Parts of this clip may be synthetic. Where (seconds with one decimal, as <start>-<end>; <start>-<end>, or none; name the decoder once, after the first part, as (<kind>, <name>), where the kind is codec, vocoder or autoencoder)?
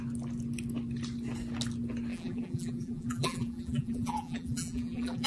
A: 2.1-5.3 (vocoder, BigVGAN v2)